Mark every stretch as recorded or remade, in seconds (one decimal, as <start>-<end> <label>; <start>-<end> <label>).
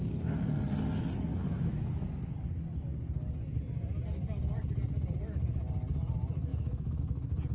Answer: 0.0-1.3 recorded; 1.3-2.3 remade; 2.3-6.5 recorded; 6.5-7.0 remade; 7.0-7.5 recorded